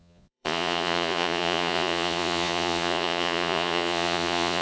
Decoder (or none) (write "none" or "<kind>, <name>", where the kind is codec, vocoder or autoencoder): vocoder, Vocos